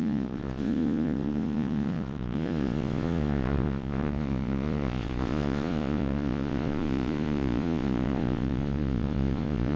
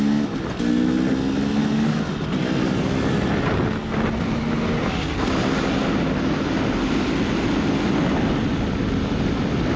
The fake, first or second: first